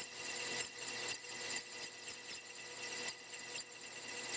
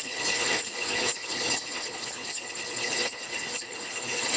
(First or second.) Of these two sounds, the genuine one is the first